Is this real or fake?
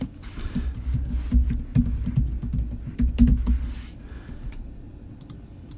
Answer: real